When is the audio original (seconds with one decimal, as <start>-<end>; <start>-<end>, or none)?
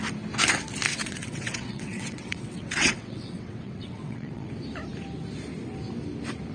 0.0-0.9; 4.5-6.5